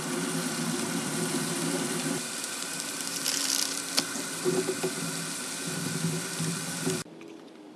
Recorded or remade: remade